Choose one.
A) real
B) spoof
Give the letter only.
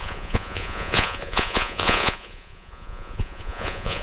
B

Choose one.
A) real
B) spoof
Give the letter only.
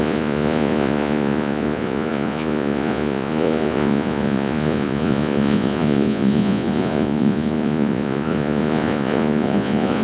B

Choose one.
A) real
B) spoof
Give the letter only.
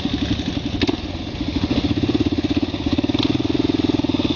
A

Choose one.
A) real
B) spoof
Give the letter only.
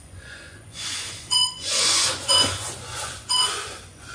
B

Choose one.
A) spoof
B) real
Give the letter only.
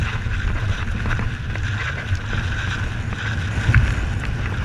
B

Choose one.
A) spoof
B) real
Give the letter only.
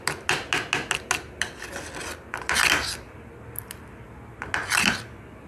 B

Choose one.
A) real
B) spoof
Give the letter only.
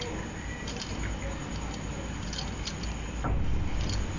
A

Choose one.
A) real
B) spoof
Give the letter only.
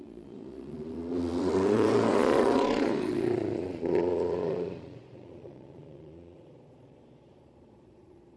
B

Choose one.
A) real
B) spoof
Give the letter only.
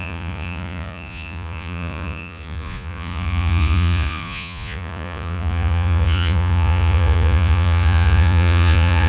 B